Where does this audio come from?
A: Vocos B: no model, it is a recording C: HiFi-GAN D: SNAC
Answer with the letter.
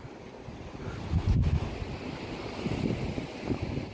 B